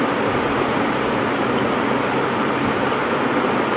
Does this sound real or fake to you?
real